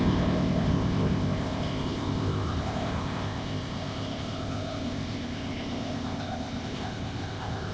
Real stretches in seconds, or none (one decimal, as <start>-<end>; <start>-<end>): none

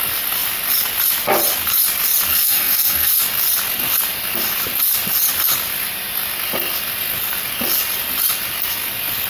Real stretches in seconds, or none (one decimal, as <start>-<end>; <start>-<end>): 0.0-2.3; 3.1-9.3

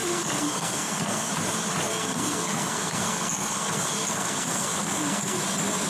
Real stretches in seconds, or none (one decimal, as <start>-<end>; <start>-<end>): 1.3-1.9; 5.4-5.9